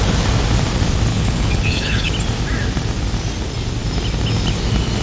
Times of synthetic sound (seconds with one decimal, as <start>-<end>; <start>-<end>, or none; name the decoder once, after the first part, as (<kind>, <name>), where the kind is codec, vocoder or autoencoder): 1.1-2.1 (codec, HILCodec)